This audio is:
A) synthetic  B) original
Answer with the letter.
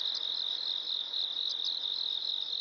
B